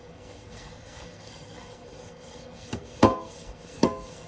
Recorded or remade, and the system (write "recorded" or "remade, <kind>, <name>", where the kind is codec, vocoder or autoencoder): remade, codec, SNAC